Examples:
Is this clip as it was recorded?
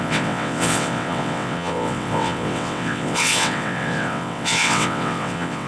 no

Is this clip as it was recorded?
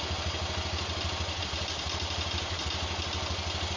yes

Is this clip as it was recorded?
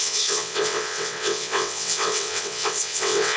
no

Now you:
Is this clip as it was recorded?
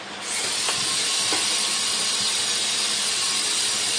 yes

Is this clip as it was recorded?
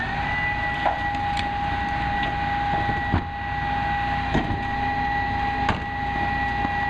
yes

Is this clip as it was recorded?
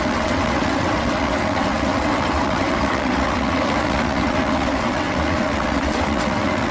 no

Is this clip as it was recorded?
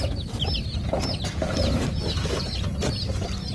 yes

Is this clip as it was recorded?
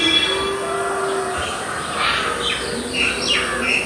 yes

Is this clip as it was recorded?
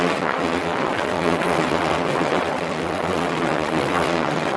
no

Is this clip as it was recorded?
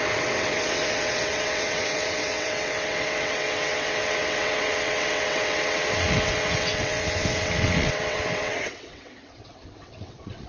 no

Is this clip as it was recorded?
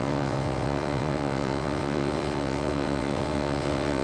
no